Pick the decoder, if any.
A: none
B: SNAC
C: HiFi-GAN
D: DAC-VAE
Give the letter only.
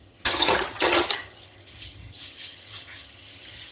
C